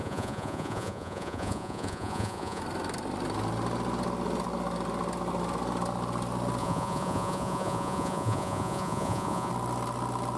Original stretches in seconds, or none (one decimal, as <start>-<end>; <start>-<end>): 2.6-6.6; 9.5-10.4